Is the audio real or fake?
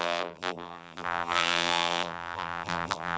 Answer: fake